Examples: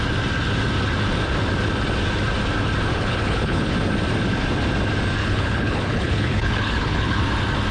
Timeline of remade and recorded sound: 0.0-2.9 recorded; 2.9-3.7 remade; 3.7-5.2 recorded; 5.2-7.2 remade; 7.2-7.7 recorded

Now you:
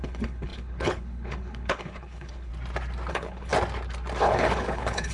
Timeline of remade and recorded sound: 0.0-2.5 remade; 2.5-3.1 recorded; 3.1-3.5 remade; 3.5-4.2 recorded; 4.2-5.1 remade

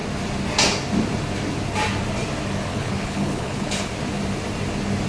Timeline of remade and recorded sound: 0.0-2.7 recorded; 2.7-3.9 remade; 3.9-5.1 recorded

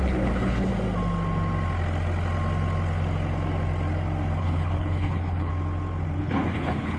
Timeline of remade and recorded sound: 0.0-0.7 remade; 0.7-4.4 recorded; 4.4-5.5 remade; 5.5-6.2 recorded; 6.2-7.0 remade

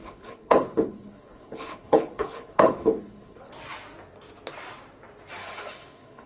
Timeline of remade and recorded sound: 0.0-3.5 remade; 3.5-5.4 recorded; 5.4-6.3 remade

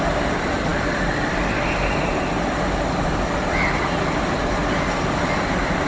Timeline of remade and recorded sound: 0.0-5.9 recorded

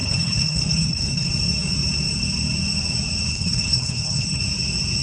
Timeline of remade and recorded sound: 0.0-1.3 remade; 1.3-3.3 recorded; 3.3-4.4 remade; 4.4-5.0 recorded

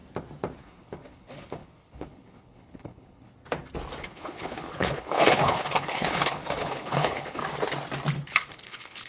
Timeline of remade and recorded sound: 0.0-0.6 recorded; 0.6-3.3 remade; 3.3-4.0 recorded; 4.0-7.4 remade; 7.4-8.5 recorded; 8.5-9.1 remade